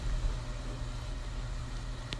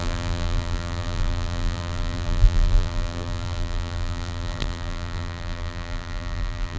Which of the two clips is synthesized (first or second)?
second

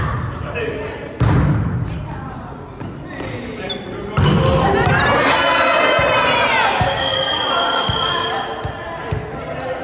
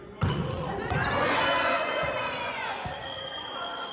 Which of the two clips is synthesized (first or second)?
second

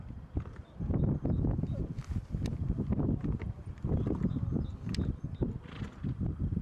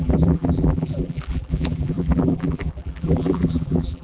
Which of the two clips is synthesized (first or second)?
second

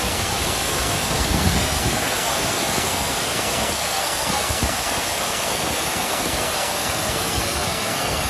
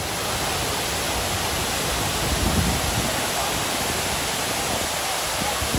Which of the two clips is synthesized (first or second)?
first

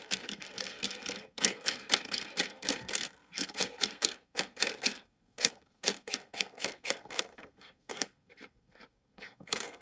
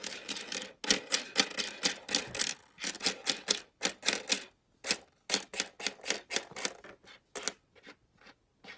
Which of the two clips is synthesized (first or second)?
first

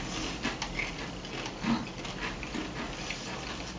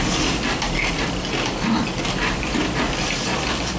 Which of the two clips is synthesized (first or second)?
second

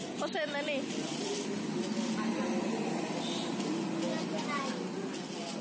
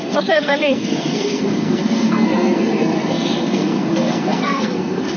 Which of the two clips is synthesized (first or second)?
second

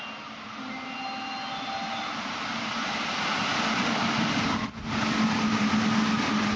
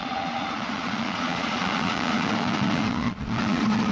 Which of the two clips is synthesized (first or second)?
second